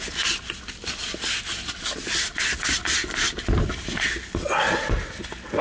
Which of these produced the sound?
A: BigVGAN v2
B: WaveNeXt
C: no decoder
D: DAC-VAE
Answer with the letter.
C